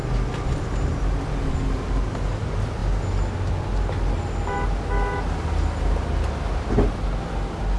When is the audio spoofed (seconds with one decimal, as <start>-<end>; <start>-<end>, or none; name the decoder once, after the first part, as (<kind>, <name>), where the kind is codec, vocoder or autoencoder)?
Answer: none